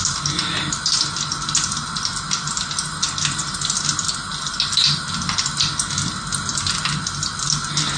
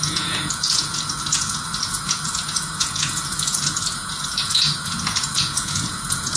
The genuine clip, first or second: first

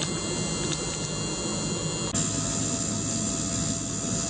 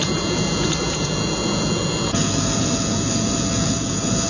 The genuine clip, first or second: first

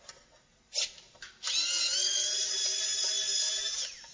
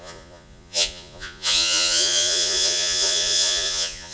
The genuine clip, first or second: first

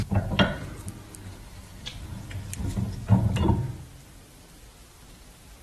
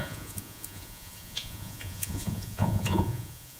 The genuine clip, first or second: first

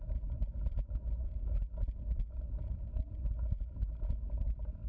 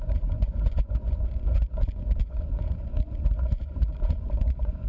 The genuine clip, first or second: first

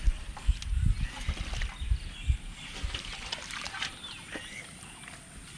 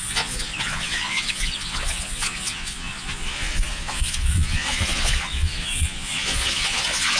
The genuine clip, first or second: first